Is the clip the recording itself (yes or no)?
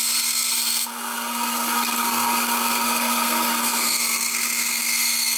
no